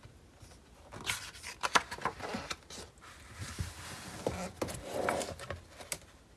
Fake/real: real